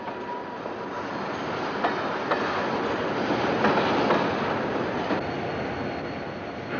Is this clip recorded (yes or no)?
yes